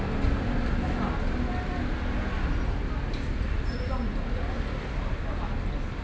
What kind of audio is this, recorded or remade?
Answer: recorded